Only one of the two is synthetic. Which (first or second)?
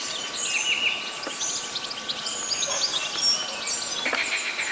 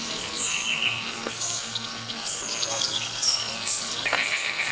second